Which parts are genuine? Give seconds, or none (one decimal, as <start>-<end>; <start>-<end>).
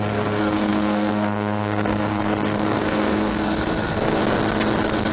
4.2-5.1